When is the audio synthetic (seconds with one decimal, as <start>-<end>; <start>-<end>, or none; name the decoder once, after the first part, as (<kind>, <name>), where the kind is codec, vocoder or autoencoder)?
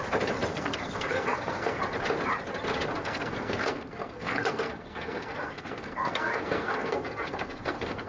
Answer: 0.5-1.8 (codec, SNAC); 3.0-8.1